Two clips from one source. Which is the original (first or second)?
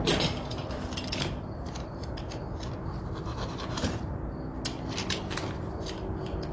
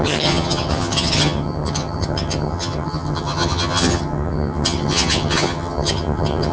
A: first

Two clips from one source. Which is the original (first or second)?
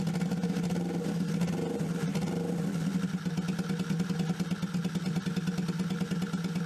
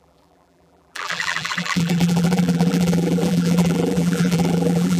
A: first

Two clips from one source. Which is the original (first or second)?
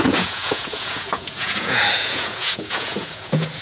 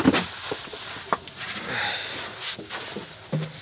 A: second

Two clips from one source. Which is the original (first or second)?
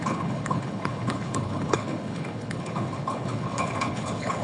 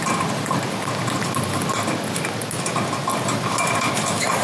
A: second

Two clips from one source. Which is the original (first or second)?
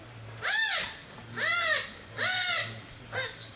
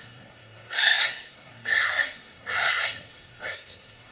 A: first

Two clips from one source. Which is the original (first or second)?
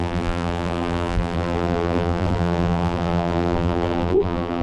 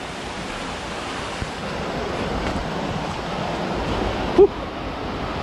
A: second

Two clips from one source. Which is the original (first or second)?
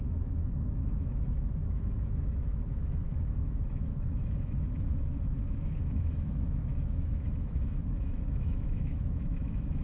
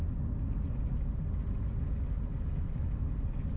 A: second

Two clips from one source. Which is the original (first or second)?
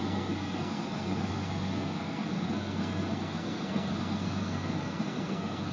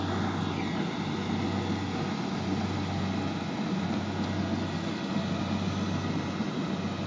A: second